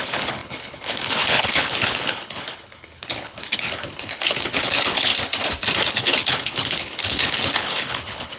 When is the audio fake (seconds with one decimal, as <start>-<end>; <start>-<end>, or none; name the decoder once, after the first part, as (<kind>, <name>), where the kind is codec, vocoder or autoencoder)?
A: 0.0-5.1 (codec, HILCodec); 5.9-8.4